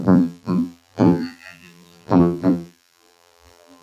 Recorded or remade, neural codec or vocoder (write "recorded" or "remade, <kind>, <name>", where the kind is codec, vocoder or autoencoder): remade, vocoder, BigVGAN v2